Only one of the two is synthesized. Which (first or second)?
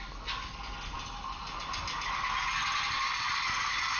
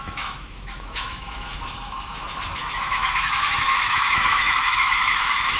second